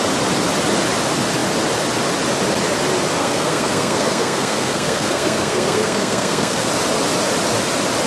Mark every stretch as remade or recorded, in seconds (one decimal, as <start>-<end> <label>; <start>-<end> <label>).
0.0-3.2 recorded; 3.2-6.7 remade; 6.7-8.1 recorded